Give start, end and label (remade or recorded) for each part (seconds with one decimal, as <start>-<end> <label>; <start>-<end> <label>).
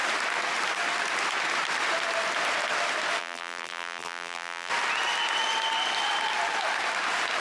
0.0-3.2 recorded; 3.2-4.7 remade; 4.7-7.4 recorded